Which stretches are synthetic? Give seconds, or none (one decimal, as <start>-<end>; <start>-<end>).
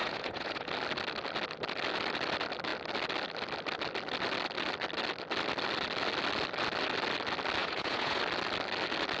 0.0-0.7; 7.6-8.2